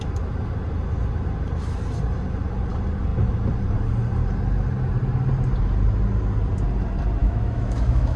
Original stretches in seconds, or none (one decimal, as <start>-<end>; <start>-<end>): 0.0-7.2

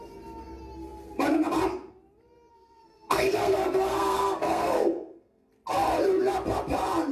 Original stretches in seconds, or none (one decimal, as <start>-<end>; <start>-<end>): 0.0-2.5; 5.5-7.1

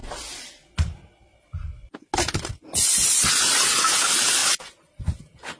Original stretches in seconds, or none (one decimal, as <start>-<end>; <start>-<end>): 0.0-5.6

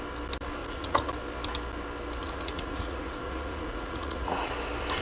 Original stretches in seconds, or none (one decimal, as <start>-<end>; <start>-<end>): 0.0-0.6; 1.1-2.2; 4.5-5.0